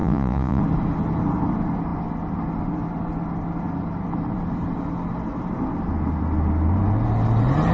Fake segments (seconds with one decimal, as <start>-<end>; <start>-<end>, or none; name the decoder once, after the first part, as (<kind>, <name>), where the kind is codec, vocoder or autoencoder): 0.0-0.6 (vocoder, Vocos)